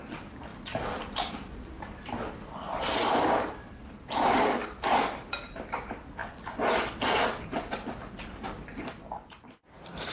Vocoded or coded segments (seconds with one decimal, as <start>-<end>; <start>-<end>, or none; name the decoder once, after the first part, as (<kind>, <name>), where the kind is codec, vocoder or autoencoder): 0.5-3.8 (vocoder, BigVGAN v2)